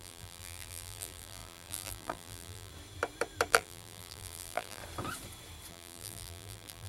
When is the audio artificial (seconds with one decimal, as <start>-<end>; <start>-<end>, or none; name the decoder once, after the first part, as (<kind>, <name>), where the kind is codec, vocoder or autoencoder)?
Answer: 0.0-2.7 (vocoder, BigVGAN v2); 3.5-4.8; 5.7-6.9